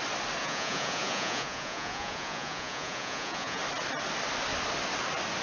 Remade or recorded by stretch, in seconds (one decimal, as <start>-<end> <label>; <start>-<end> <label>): 0.0-0.4 recorded; 0.4-3.6 remade; 3.6-5.4 recorded